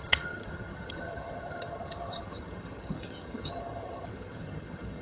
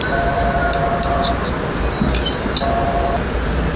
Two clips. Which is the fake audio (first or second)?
first